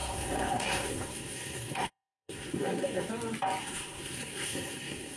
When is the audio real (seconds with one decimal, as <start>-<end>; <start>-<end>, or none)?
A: 3.1-3.6

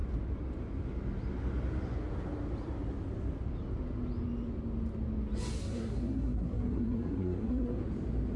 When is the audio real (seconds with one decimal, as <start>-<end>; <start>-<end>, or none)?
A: 0.0-5.6; 7.8-8.4

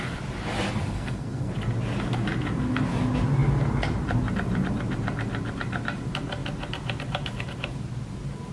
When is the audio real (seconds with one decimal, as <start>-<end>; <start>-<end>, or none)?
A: 0.0-0.8; 1.5-8.5